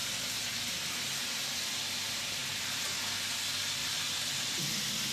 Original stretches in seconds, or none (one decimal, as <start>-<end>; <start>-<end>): 0.0-2.4; 3.0-3.8; 4.6-5.1